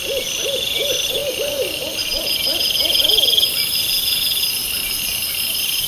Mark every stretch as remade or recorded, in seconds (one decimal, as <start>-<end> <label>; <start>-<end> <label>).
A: 0.0-2.5 remade; 2.5-3.1 recorded; 3.1-4.6 remade; 4.6-5.3 recorded; 5.3-5.9 remade